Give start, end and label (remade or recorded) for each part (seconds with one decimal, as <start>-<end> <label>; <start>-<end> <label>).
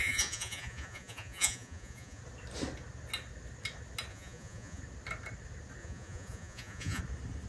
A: 0.0-2.2 remade; 2.2-4.1 recorded; 4.1-4.8 remade; 4.8-5.8 recorded; 5.8-7.0 remade; 7.0-7.5 recorded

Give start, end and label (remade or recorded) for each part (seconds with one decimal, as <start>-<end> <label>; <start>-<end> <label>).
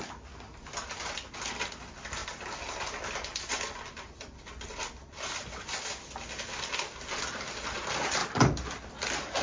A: 0.0-9.4 recorded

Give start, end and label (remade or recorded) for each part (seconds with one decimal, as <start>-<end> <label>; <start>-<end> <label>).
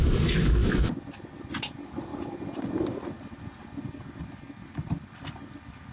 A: 0.0-5.9 recorded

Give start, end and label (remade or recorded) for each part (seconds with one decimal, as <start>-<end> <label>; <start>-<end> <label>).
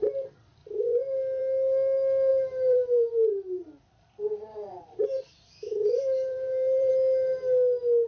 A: 0.0-2.3 recorded; 2.3-6.9 remade; 6.9-8.1 recorded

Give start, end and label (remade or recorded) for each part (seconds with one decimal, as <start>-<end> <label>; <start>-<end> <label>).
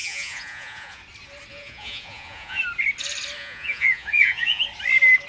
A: 0.0-1.0 remade; 1.0-1.5 recorded; 1.5-2.6 remade; 2.6-3.4 recorded; 3.4-4.6 remade; 4.6-5.3 recorded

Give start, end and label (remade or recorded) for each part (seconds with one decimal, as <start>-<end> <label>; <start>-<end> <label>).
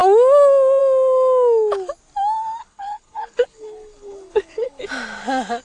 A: 0.0-2.6 recorded; 2.6-4.8 remade; 4.8-5.6 recorded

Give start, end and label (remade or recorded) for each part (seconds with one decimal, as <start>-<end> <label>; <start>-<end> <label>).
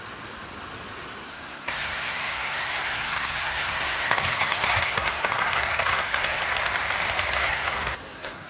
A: 0.0-1.3 recorded; 1.3-6.4 remade; 6.4-7.4 recorded; 7.4-8.5 remade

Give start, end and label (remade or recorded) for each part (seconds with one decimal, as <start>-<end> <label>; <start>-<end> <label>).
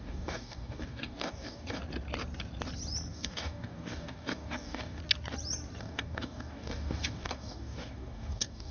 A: 0.0-1.8 remade; 1.8-3.1 recorded; 3.1-5.0 remade; 5.0-5.8 recorded; 5.8-8.7 remade